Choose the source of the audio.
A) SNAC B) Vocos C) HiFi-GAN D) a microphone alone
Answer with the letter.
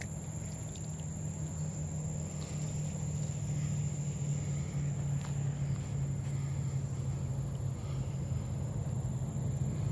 D